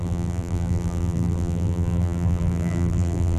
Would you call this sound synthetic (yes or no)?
yes